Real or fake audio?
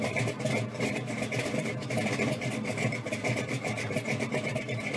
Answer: fake